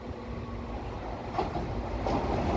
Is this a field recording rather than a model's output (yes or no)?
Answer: yes